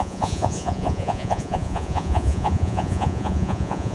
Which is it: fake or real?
fake